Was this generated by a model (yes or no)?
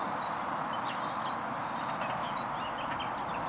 no